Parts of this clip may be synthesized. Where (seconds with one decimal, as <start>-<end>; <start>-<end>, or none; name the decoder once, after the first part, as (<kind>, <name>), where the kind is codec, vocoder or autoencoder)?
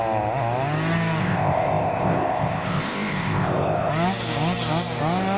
1.2-3.9 (codec, ZipCodec)